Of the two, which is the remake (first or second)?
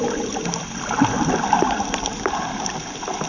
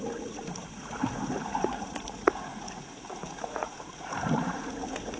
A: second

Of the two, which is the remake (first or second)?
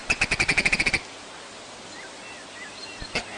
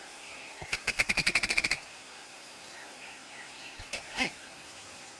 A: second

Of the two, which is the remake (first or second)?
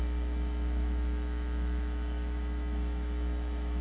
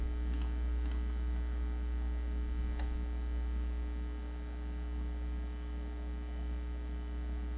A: first